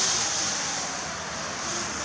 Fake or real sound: real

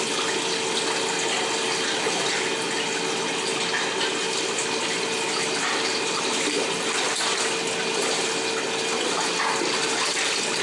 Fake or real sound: real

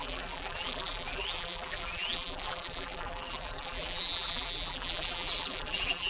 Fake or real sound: fake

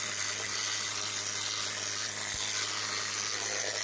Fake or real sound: real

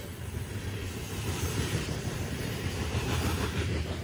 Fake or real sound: fake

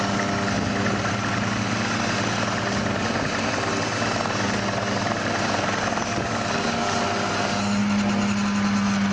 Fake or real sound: real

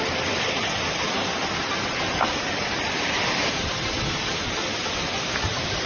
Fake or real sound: real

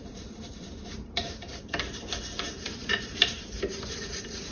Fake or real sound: fake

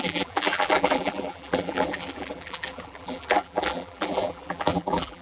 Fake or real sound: fake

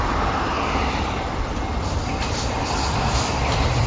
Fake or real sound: real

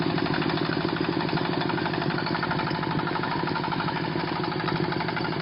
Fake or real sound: real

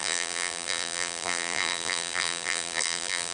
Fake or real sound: fake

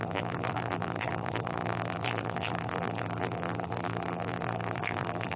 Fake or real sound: fake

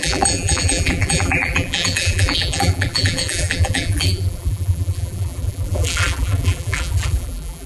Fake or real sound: fake